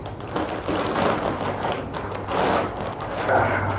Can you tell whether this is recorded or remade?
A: recorded